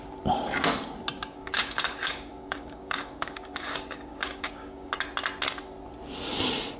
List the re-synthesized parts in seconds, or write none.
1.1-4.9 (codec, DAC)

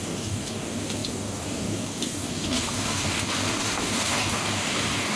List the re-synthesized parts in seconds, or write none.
0.0-5.2 (codec, DAC)

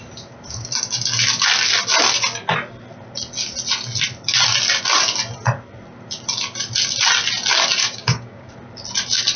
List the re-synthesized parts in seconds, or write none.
7.8-8.5 (codec, DAC)

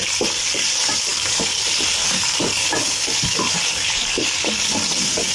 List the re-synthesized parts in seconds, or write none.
1.1-1.6 (codec, DAC); 2.0-4.7